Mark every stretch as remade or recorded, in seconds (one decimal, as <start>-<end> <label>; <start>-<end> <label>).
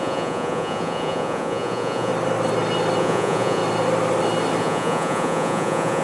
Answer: 0.0-2.1 remade; 2.1-3.0 recorded; 3.0-3.6 remade; 3.6-4.6 recorded; 4.6-6.0 remade